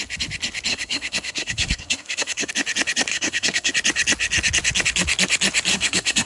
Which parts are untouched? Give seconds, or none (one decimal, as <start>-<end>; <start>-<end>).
0.0-0.7; 2.5-3.1; 3.7-5.7